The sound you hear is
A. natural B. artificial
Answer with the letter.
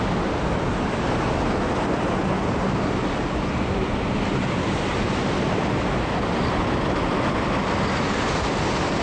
A